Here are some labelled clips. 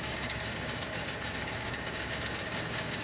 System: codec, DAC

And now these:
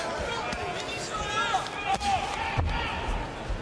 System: none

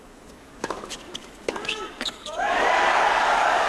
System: codec, DAC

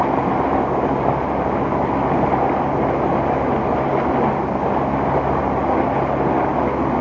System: none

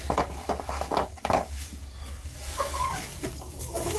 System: codec, DAC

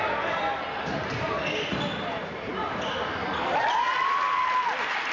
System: none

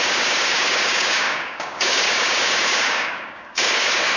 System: codec, DAC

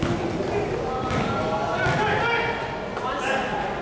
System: none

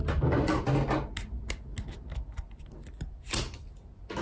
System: none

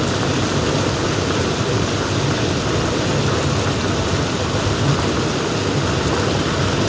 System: none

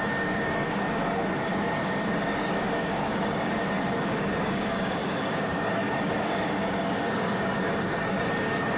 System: codec, DAC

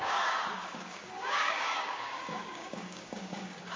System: codec, DAC